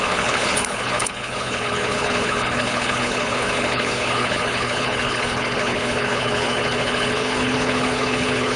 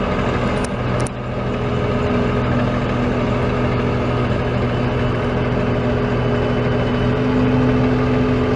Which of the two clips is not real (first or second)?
first